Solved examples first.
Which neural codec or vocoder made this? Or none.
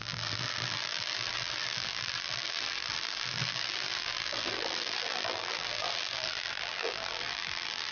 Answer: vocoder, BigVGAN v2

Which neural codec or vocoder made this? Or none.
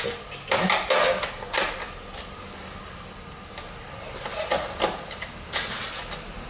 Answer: none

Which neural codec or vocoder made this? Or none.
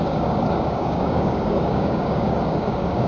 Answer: codec, DAC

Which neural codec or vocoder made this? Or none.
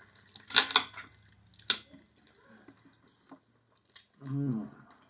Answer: none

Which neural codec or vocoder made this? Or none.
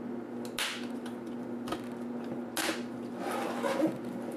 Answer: none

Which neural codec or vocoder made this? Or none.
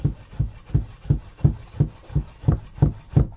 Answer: none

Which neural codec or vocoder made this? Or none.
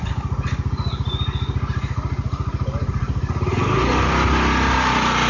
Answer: none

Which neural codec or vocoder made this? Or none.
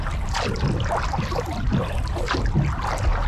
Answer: none